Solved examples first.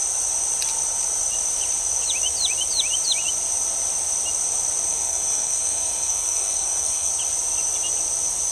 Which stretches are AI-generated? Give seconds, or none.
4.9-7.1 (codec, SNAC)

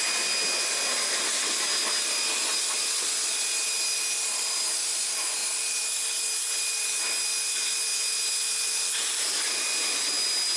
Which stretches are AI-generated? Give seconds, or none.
none

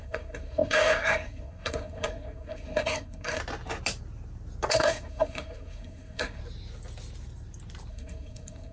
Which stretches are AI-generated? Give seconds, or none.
0.0-3.4 (codec, SNAC); 4.7-6.4; 7.9-8.7